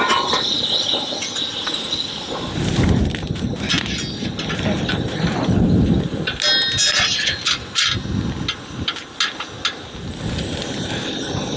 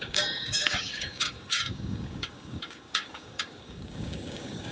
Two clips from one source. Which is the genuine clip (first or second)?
first